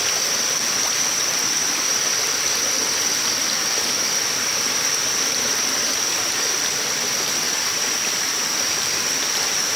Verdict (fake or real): fake